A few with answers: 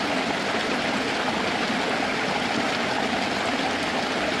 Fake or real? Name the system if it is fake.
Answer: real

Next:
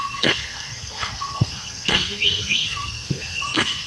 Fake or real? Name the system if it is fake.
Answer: fake, codec, SNAC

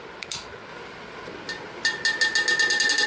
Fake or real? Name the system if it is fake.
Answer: real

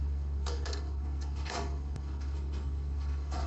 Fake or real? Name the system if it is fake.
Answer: fake, codec, SNAC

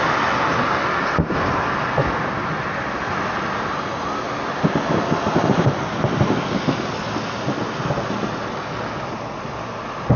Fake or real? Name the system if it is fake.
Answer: real